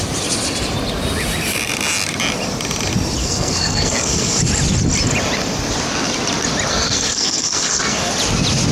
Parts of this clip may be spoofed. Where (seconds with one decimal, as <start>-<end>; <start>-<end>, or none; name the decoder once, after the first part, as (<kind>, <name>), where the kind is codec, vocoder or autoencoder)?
3.2-4.4 (codec, SNAC); 6.7-8.1